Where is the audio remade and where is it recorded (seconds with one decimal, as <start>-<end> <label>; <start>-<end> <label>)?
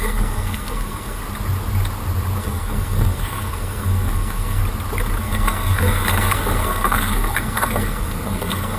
0.0-1.2 remade; 1.2-2.4 recorded; 2.4-4.6 remade; 4.6-5.2 recorded; 5.2-8.8 remade